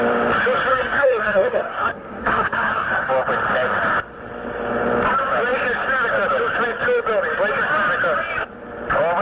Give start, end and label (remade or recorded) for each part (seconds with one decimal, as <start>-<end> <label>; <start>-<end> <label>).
0.0-0.7 recorded; 0.7-3.1 remade; 3.1-9.2 recorded